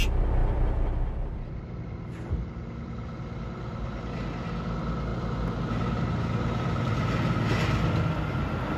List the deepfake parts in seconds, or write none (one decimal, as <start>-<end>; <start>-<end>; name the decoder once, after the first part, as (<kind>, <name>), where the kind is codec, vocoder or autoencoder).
none